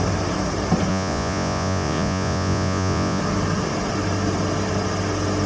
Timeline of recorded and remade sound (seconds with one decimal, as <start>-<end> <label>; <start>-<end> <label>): 0.0-0.9 recorded; 0.9-3.2 remade; 3.2-5.5 recorded